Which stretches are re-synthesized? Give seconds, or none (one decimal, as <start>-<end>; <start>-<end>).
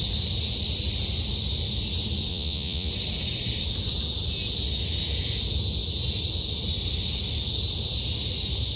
2.3-2.9